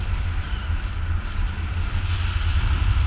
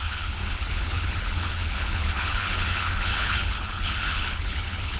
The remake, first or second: second